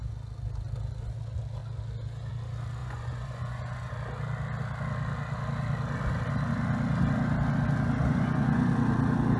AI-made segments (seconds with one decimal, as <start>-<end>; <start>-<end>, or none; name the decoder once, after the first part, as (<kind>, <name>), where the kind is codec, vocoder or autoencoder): 2.8-3.9 (vocoder, Vocos); 8.0-8.7